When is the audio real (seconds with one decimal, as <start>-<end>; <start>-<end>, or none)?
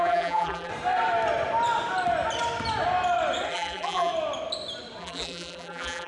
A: 0.7-3.5; 4.1-5.0